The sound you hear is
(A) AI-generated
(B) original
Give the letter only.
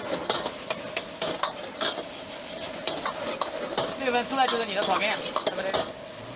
B